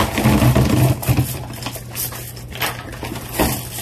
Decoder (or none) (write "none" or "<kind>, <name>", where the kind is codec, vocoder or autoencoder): none